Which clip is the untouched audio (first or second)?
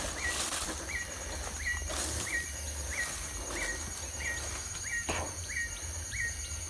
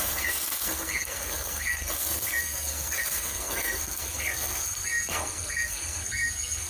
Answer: first